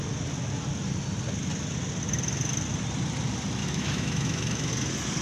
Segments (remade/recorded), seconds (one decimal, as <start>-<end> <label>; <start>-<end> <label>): 0.0-3.6 recorded; 3.6-4.7 remade; 4.7-5.2 recorded